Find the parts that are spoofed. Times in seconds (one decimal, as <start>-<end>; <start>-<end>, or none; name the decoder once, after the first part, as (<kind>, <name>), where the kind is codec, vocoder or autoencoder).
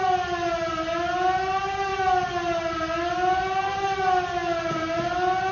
none